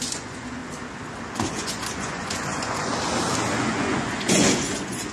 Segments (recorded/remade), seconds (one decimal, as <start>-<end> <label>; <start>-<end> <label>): 0.0-0.6 remade; 0.6-1.5 recorded; 1.5-2.9 remade; 2.9-3.6 recorded; 3.6-5.1 remade